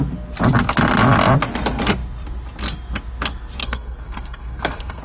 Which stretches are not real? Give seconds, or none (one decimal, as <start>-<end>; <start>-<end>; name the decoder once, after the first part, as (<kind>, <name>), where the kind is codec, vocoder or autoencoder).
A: 3.6-5.0 (codec, SNAC)